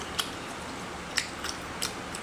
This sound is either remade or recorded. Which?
recorded